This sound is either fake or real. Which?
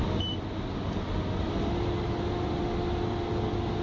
real